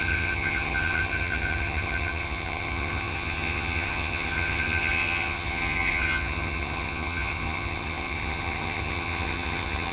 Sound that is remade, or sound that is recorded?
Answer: remade